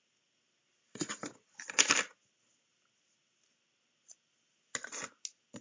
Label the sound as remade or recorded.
recorded